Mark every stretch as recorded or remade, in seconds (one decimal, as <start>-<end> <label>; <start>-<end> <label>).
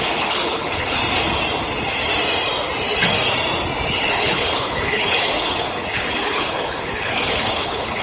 0.0-1.0 remade; 1.0-3.9 recorded; 3.9-8.0 remade